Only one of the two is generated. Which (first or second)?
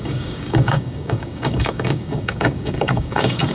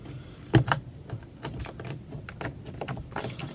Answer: first